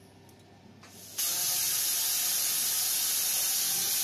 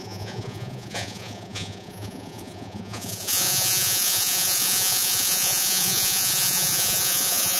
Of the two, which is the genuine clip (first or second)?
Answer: first